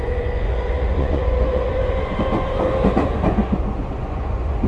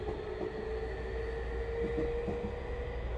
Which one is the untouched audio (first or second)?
second